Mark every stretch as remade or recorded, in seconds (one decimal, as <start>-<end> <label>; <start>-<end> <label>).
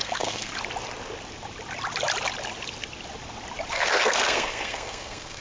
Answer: 0.0-0.5 remade; 0.5-3.7 recorded; 3.7-5.4 remade